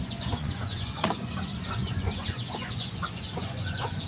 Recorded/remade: remade